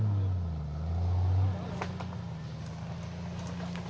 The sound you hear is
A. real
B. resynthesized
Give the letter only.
A